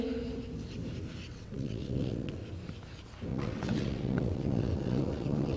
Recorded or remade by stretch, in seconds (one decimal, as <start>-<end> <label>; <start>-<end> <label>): 0.0-1.3 recorded; 1.3-2.4 remade; 2.4-3.3 recorded; 3.3-5.6 remade